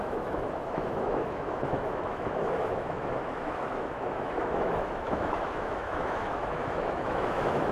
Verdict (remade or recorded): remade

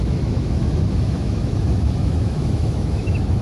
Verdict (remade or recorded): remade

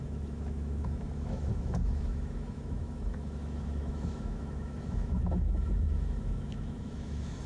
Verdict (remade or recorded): remade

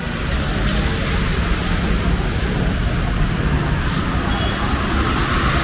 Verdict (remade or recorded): recorded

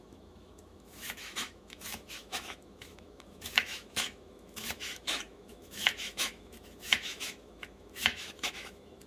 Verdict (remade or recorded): remade